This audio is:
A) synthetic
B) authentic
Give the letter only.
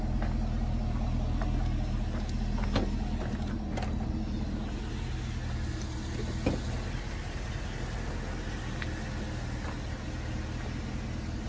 B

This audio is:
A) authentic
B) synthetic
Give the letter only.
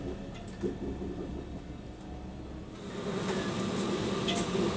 A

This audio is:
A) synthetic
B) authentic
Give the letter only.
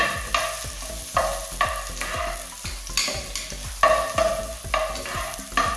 B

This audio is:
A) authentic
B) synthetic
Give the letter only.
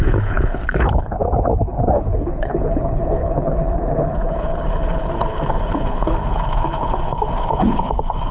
B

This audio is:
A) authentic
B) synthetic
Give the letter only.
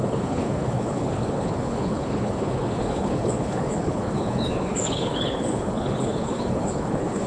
B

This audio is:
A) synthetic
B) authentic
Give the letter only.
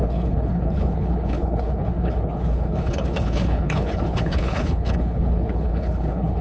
A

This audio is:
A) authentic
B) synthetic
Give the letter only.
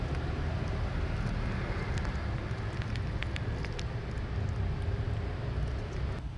A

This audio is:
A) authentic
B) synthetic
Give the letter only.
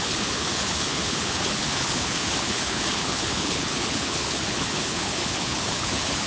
B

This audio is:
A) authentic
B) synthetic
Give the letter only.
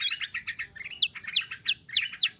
A